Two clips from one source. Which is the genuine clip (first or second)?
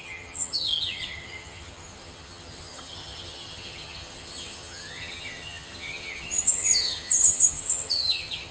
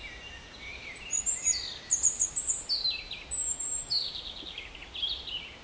second